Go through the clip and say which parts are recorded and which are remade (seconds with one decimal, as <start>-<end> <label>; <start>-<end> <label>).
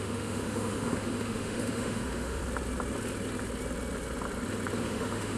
0.0-2.4 remade; 2.4-4.8 recorded; 4.8-5.4 remade